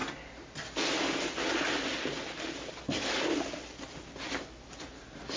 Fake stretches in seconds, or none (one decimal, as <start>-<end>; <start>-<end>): none